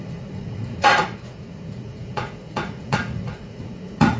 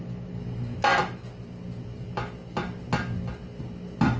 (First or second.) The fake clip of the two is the first